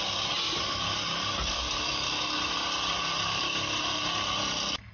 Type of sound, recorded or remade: recorded